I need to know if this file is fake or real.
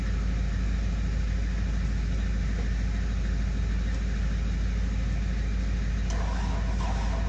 real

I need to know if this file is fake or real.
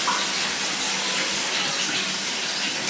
real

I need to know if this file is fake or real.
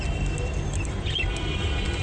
real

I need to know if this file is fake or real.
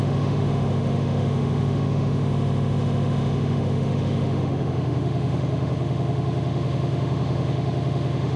fake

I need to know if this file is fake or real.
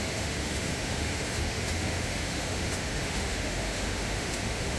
fake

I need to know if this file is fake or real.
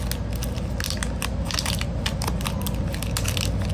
real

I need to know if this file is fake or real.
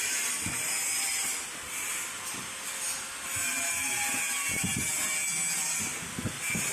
real